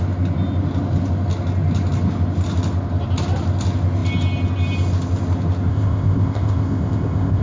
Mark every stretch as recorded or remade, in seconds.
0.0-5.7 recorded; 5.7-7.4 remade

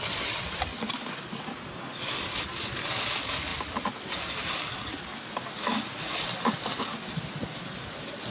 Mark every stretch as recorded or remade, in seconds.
0.0-8.3 recorded

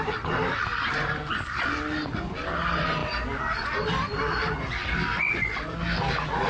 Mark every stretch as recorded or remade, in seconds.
0.0-6.5 recorded